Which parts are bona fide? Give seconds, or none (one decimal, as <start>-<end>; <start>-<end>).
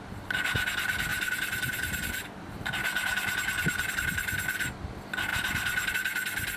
0.0-1.1; 3.9-5.3; 5.9-6.6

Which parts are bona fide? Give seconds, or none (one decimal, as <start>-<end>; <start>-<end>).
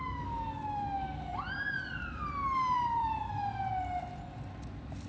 0.0-1.3; 3.3-5.1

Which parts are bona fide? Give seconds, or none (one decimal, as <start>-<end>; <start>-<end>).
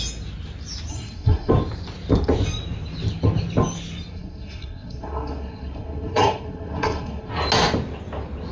0.0-0.9; 1.5-4.1; 7.3-8.5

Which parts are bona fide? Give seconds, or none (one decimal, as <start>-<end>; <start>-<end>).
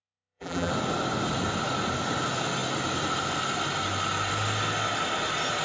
0.7-5.6